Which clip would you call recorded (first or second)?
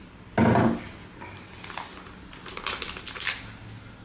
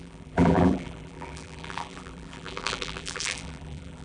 first